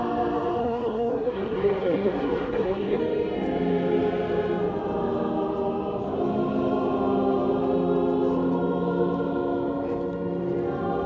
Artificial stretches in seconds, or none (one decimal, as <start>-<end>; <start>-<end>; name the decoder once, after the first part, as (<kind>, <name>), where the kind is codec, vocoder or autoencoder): 0.6-3.0 (codec, SNAC)